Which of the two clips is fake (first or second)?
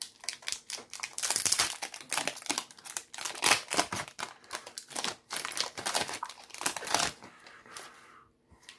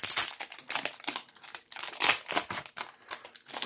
first